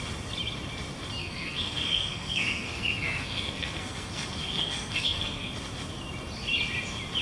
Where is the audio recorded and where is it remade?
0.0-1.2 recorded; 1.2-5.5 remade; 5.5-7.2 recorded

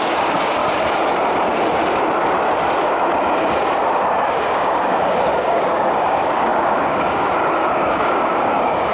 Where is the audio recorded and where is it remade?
0.0-0.6 remade; 0.6-4.3 recorded; 4.3-8.9 remade

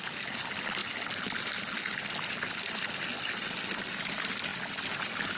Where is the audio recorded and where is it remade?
0.0-5.4 recorded

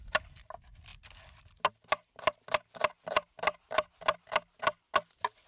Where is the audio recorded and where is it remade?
0.0-5.5 recorded